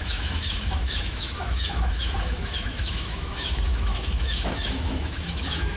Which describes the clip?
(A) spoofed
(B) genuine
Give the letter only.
A